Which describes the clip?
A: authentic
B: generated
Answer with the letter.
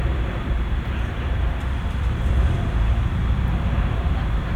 B